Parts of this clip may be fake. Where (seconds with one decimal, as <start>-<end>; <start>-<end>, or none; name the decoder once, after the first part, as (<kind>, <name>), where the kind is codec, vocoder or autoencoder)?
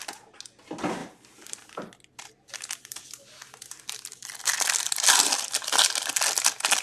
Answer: none